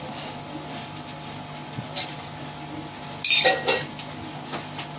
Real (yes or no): yes